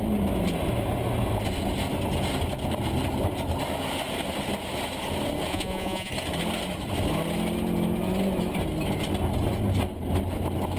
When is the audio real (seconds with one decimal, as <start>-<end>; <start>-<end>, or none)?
0.0-5.5; 6.1-10.8

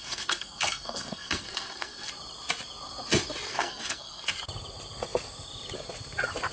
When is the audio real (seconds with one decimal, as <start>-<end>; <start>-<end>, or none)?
2.1-3.5; 4.3-6.5

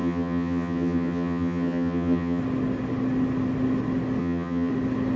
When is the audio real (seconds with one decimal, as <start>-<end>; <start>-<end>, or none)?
2.4-4.2; 4.7-5.2